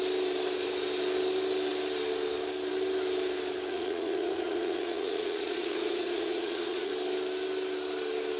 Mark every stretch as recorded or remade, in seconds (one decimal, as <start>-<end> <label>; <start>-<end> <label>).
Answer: 0.0-3.7 recorded; 3.7-6.9 remade; 6.9-8.4 recorded

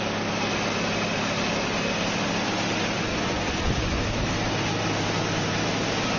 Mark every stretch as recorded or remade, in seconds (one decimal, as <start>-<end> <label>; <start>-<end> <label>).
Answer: 0.0-3.1 recorded; 3.1-4.0 remade; 4.0-6.2 recorded

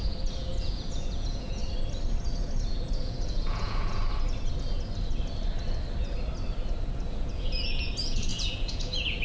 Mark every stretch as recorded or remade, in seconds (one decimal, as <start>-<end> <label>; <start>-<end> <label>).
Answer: 0.0-1.6 remade; 1.6-2.7 recorded; 2.7-4.0 remade; 4.0-7.1 recorded; 7.1-9.2 remade

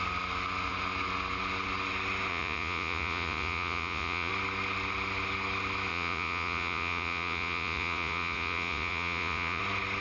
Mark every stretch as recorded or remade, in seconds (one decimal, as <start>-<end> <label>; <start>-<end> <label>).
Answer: 0.0-2.3 recorded; 2.3-4.3 remade; 4.3-5.9 recorded; 5.9-9.6 remade; 9.6-10.0 recorded

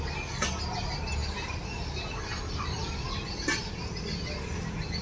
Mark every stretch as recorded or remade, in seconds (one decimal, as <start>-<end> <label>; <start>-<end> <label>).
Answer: 0.0-5.0 recorded

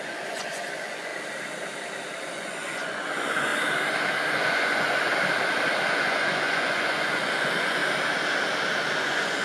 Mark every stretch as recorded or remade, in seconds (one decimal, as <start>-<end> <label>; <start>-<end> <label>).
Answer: 0.0-1.1 remade; 1.1-2.3 recorded; 2.3-3.5 remade; 3.5-4.3 recorded; 4.3-5.1 remade; 5.1-5.9 recorded; 5.9-7.8 remade; 7.8-9.0 recorded; 9.0-9.4 remade

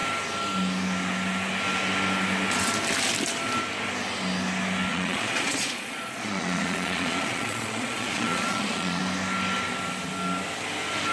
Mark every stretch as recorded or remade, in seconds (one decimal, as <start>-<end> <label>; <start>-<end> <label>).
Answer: 0.0-4.9 recorded; 4.9-9.0 remade; 9.0-11.1 recorded

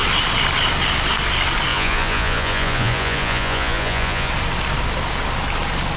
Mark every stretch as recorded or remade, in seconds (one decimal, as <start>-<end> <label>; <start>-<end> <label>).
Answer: 0.0-1.7 recorded; 1.7-4.3 remade; 4.3-6.0 recorded